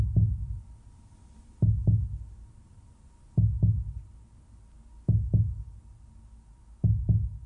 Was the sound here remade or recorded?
recorded